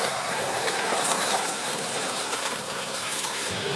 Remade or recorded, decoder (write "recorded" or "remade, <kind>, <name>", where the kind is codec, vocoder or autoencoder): remade, codec, SNAC